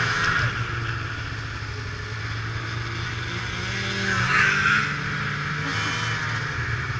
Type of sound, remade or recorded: recorded